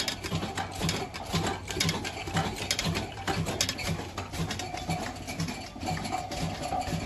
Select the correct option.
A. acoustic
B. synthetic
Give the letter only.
A